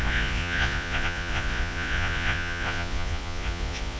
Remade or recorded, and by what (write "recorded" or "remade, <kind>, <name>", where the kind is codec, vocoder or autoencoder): remade, vocoder, Vocos